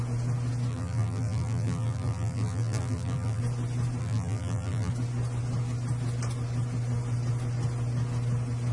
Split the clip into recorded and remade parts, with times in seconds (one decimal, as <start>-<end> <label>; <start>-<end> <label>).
0.0-0.7 recorded; 0.7-3.4 remade; 3.4-4.0 recorded; 4.0-4.9 remade; 4.9-8.7 recorded